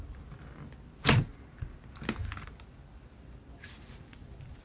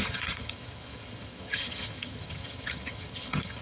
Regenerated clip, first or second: second